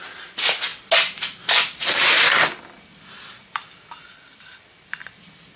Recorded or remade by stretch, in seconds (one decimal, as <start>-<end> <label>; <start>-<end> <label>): 0.0-5.6 recorded